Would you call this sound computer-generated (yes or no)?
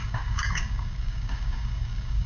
yes